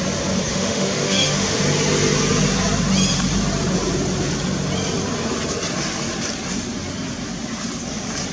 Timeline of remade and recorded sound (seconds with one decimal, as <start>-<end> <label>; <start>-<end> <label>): 0.0-0.5 recorded; 0.5-1.6 remade; 1.6-8.3 recorded

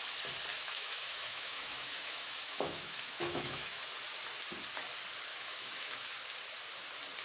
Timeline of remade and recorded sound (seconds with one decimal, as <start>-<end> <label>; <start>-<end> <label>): 0.0-0.5 recorded; 0.5-3.8 remade; 3.8-5.3 recorded; 5.3-6.1 remade; 6.1-7.2 recorded

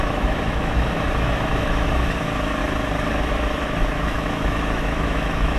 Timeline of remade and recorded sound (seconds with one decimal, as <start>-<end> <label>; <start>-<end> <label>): 0.0-2.6 remade; 2.6-3.2 recorded; 3.2-5.6 remade

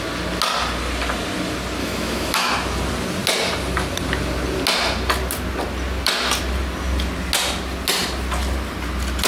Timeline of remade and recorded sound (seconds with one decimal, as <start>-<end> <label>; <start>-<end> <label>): 0.0-1.8 recorded; 1.8-2.5 remade; 2.5-9.3 recorded

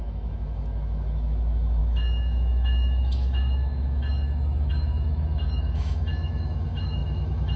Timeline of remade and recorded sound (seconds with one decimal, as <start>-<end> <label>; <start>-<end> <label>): 0.0-7.6 remade

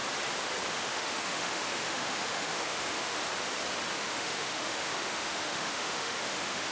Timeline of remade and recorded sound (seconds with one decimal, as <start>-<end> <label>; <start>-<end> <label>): 0.0-0.7 recorded; 0.7-3.2 remade; 3.2-3.9 recorded; 3.9-6.7 remade

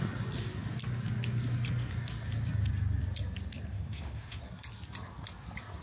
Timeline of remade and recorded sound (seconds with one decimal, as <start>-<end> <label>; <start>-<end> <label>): 0.0-3.7 recorded; 3.7-4.4 remade; 4.4-5.8 recorded

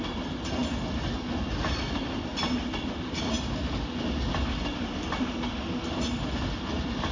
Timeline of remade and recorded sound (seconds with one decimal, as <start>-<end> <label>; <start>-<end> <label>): 0.0-7.1 recorded